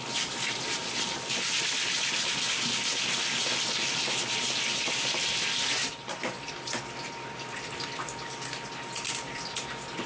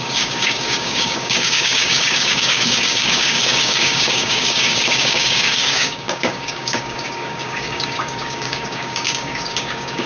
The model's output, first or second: second